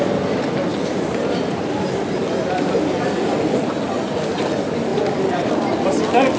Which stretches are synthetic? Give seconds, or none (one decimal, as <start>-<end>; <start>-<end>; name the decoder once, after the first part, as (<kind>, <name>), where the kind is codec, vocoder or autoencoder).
0.7-4.5 (vocoder, BigVGAN v2); 4.9-5.5